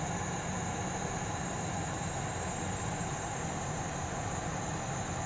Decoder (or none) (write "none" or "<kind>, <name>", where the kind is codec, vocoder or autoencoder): none